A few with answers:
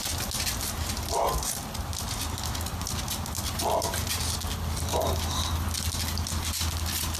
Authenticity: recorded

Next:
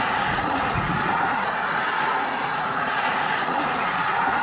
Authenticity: remade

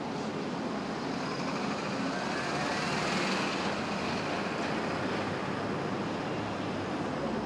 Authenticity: recorded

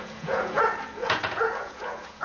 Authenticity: remade